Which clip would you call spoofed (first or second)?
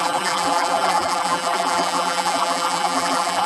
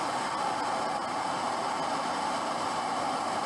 first